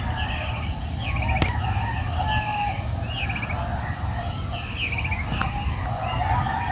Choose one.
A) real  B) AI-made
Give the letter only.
A